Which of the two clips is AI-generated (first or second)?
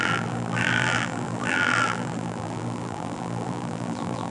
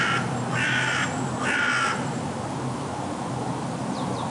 first